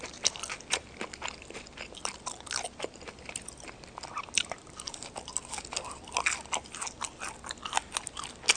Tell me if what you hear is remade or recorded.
recorded